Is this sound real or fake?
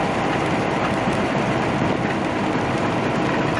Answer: real